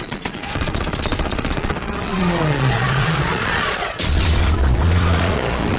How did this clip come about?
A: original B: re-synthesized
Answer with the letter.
B